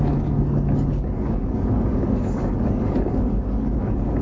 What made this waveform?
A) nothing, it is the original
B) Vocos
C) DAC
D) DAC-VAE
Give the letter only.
C